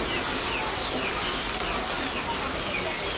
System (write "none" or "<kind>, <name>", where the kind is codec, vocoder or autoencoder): none